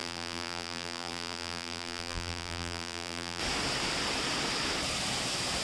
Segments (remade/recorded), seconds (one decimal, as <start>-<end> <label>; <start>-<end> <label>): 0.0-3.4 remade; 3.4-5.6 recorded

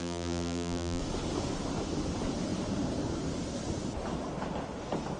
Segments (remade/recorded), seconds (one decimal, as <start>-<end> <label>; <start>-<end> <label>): 0.0-1.0 remade; 1.0-5.2 recorded

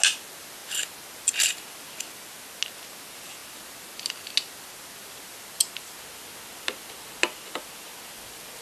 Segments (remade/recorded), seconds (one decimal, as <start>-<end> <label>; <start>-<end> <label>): 0.0-8.6 recorded

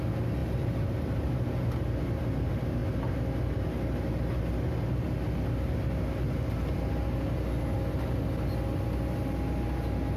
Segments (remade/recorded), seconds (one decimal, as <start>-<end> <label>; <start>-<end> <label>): 0.0-0.4 recorded; 0.4-1.7 remade; 1.7-10.2 recorded

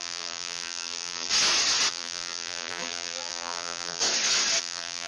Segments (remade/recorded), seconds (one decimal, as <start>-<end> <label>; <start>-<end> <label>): 0.0-1.3 remade; 1.3-1.9 recorded; 1.9-4.0 remade; 4.0-4.6 recorded; 4.6-5.1 remade